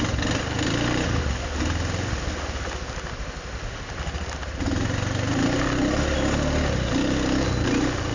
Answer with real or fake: real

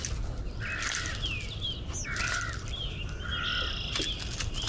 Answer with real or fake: fake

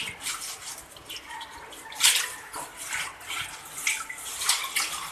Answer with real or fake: real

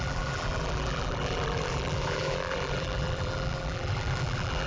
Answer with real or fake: fake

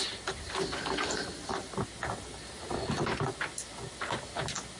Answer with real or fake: real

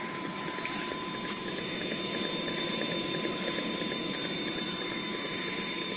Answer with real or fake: fake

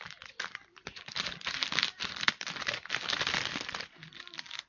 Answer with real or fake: fake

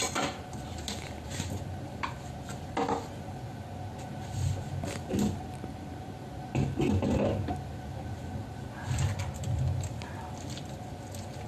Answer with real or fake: real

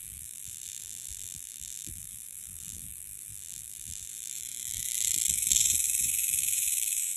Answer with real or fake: fake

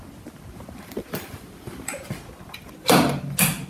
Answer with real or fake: real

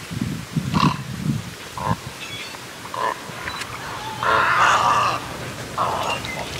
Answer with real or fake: real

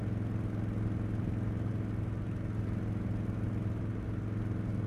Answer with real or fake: real